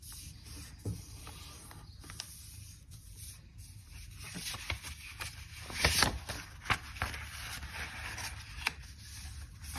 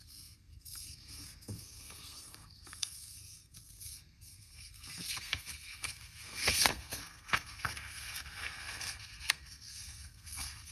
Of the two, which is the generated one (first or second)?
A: second